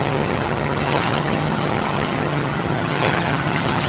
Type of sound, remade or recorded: remade